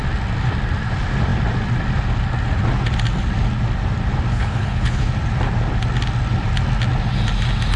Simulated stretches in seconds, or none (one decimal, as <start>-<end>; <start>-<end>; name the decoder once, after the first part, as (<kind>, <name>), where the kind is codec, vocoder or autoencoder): 4.3-5.1 (codec, HILCodec)